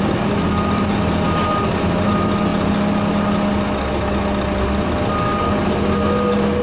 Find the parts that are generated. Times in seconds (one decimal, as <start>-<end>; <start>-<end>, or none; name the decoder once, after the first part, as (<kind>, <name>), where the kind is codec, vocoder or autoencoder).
none